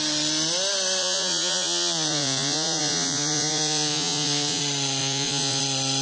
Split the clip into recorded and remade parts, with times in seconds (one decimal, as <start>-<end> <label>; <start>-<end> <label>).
0.0-1.0 recorded; 1.0-4.6 remade; 4.6-5.0 recorded; 5.0-5.6 remade; 5.6-6.0 recorded